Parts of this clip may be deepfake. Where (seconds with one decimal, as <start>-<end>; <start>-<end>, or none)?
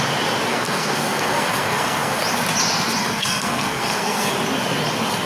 0.5-2.2; 3.0-4.3